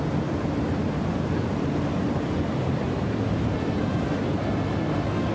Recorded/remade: recorded